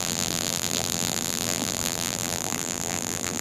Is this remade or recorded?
remade